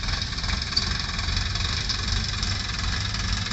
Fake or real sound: real